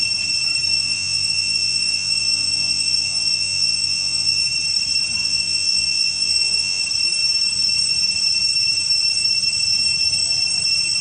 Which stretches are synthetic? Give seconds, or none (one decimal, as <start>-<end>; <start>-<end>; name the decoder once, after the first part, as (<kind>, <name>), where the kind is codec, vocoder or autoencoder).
0.7-4.4 (vocoder, Vocos); 5.2-6.8